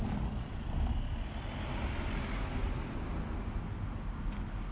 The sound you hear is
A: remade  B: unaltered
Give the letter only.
B